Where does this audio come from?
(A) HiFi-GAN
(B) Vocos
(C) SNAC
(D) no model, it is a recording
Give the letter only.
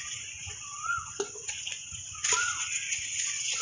B